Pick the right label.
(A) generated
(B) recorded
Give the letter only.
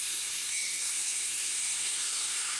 A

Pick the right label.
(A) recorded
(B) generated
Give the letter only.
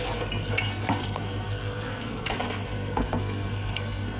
B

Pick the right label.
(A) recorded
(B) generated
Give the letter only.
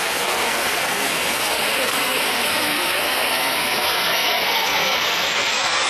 B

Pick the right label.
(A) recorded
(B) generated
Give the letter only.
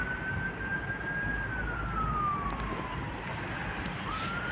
A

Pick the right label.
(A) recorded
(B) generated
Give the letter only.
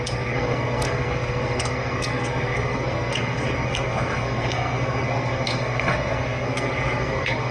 B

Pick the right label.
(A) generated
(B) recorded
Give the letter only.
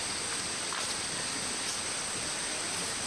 B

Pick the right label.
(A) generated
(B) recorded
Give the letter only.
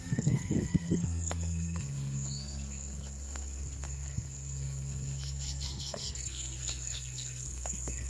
A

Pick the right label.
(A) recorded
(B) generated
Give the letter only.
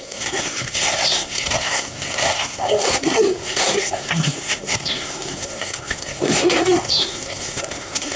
B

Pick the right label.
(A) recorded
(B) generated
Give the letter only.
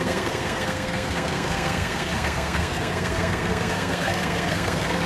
B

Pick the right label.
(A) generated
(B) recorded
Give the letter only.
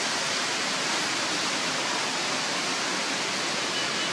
B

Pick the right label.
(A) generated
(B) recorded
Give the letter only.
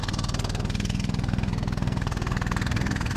A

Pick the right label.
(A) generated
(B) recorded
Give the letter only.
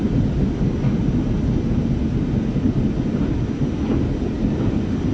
B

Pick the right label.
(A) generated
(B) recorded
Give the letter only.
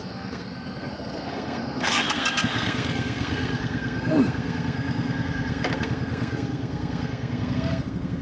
A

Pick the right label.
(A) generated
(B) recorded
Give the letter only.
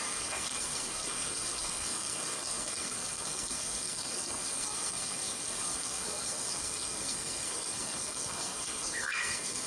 A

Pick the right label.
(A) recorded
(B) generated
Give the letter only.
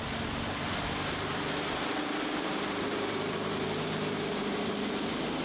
A